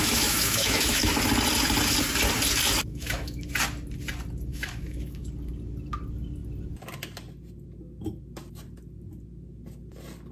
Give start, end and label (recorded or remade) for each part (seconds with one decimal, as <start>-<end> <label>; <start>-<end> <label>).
0.0-1.1 remade; 1.1-2.9 recorded; 2.9-3.5 remade; 3.5-4.5 recorded; 4.5-5.3 remade; 5.3-10.3 recorded